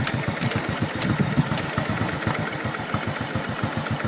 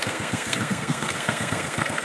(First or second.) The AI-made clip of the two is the second